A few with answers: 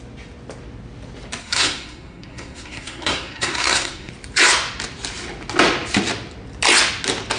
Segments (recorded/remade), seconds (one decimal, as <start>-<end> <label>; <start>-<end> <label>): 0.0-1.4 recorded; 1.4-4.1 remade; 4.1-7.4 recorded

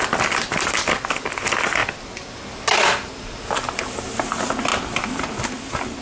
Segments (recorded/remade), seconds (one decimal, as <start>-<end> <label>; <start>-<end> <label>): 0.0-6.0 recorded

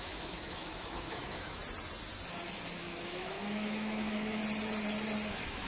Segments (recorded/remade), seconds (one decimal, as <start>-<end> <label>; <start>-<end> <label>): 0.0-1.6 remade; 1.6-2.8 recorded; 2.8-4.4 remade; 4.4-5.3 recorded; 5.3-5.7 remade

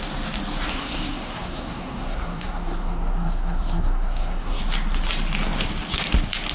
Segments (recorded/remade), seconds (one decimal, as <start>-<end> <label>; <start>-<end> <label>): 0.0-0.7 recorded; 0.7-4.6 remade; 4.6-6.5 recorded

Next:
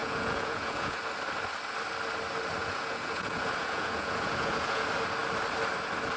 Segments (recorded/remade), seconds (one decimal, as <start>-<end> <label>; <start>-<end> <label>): 0.0-1.0 remade; 1.0-2.6 recorded; 2.6-4.8 remade; 4.8-6.2 recorded

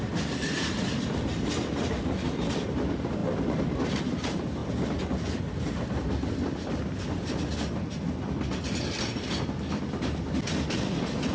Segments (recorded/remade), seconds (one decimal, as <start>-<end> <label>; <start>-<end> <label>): 0.0-11.3 recorded

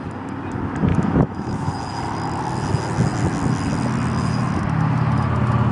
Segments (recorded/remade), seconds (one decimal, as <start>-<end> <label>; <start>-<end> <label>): 0.0-0.9 recorded; 0.9-1.7 remade; 1.7-5.7 recorded